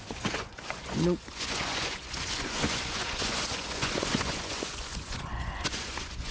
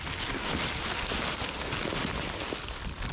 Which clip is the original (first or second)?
second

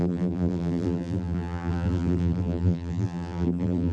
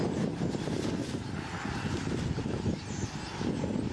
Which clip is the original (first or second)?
second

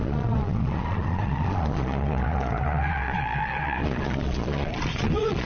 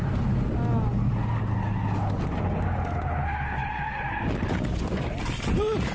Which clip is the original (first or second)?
second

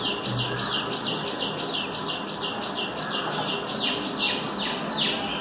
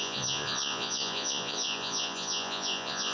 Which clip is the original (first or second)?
first